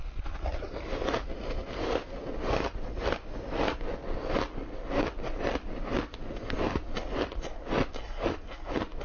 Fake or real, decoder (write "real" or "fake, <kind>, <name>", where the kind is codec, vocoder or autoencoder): real